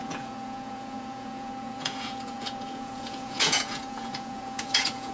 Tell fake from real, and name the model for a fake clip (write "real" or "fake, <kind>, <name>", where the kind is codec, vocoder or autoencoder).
fake, vocoder, Vocos